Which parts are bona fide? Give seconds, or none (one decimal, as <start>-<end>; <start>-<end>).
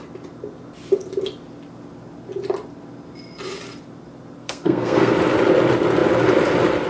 0.0-4.4; 5.1-6.9